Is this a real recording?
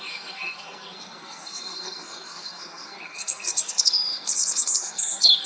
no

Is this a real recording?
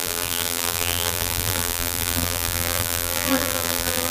no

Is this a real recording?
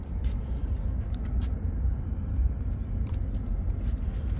no